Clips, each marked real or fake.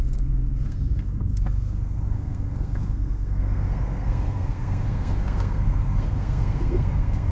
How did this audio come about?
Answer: fake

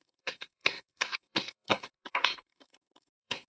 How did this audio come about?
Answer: fake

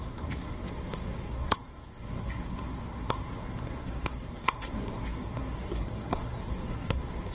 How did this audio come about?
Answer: fake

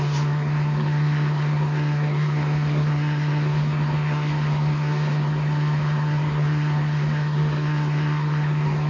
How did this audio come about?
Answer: fake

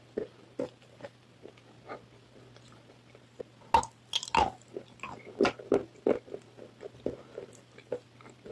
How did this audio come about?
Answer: real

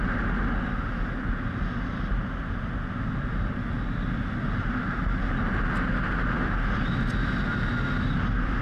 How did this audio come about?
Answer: real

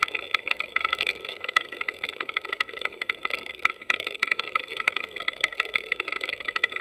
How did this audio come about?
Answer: fake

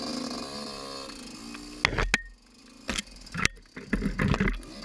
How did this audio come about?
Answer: real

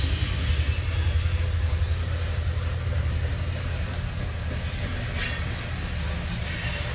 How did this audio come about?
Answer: real